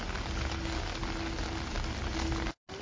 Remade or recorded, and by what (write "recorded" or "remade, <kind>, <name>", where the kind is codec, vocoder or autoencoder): recorded